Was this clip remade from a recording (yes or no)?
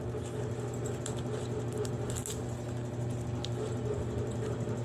no